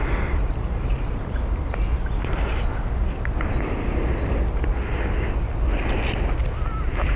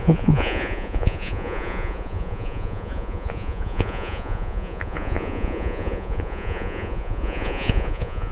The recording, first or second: first